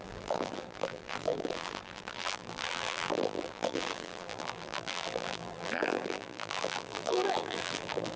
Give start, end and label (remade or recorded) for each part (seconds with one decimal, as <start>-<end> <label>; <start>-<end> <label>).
0.0-8.2 remade